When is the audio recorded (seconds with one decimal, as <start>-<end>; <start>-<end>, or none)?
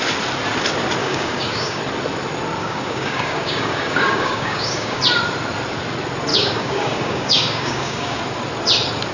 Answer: 0.0-1.0; 1.8-2.6; 5.0-6.3; 8.2-9.1